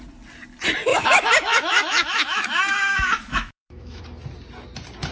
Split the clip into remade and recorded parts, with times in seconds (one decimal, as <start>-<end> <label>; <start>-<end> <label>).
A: 0.0-0.9 recorded; 0.9-4.0 remade; 4.0-5.1 recorded